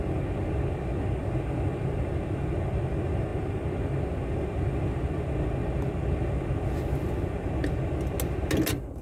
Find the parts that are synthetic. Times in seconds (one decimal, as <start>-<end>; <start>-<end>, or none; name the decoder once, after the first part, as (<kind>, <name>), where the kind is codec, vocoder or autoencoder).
none